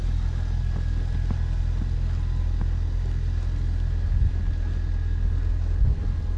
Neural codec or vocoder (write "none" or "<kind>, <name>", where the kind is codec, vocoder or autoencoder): none